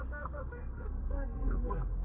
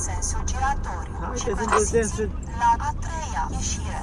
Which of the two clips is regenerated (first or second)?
first